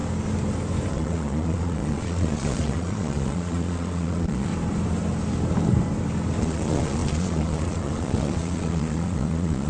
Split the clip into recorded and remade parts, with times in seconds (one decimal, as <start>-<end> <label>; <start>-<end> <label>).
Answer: 0.0-0.9 recorded; 0.9-4.5 remade; 4.5-6.4 recorded; 6.4-9.7 remade